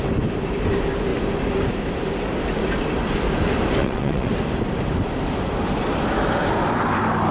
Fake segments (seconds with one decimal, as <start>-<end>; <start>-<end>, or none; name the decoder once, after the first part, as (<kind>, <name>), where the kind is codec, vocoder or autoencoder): 3.8-4.3 (vocoder, WaveNeXt)